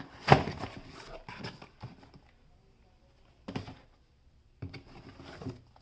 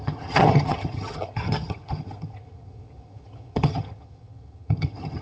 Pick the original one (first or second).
first